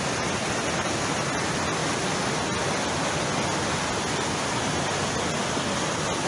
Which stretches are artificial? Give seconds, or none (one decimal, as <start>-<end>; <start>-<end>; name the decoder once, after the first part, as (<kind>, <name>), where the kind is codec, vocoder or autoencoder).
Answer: none